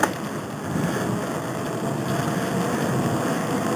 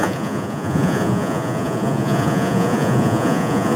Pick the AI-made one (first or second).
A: second